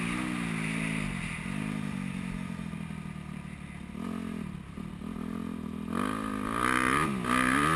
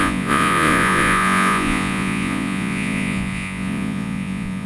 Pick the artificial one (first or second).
second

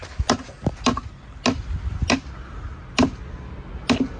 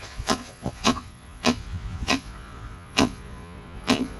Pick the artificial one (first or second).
second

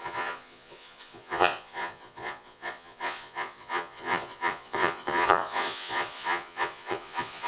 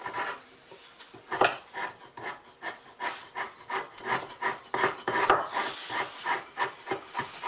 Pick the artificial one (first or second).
first